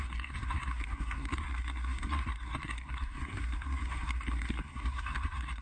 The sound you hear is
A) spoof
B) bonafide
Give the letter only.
A